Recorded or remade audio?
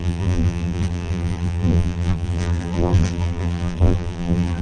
remade